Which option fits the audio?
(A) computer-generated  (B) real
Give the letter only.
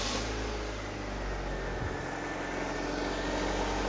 B